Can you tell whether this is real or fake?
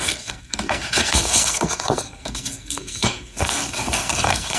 fake